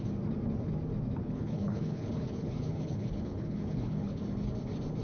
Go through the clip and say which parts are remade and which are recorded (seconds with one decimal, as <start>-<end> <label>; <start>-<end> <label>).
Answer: 0.0-1.2 recorded; 1.2-4.2 remade; 4.2-5.0 recorded